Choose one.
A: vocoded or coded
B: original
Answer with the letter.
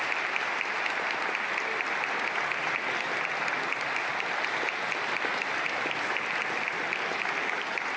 B